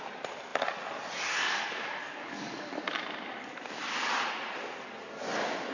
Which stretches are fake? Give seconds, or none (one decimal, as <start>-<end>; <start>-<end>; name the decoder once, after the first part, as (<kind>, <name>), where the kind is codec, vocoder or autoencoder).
2.0-2.7 (codec, DAC)